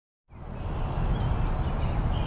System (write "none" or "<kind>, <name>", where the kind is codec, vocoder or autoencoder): none